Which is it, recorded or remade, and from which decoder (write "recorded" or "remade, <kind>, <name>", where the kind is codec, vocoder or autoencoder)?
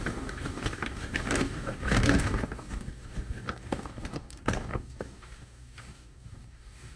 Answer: remade, codec, DAC